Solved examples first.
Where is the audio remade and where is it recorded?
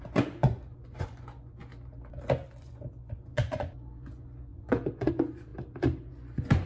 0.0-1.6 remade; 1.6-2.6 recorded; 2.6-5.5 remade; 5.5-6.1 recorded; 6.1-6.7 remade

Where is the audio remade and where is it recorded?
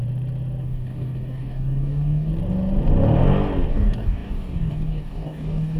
0.0-0.6 recorded; 0.6-2.3 remade; 2.3-3.7 recorded; 3.7-5.8 remade